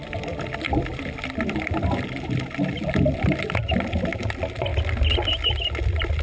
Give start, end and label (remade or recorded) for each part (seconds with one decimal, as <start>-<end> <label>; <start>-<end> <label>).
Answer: 0.0-4.7 remade; 4.7-5.8 recorded; 5.8-6.2 remade